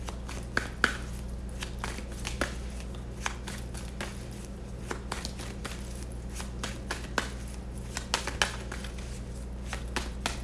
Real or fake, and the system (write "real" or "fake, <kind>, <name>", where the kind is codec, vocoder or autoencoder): real